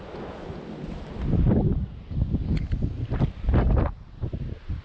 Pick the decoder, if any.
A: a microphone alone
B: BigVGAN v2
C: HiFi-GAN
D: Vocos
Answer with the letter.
A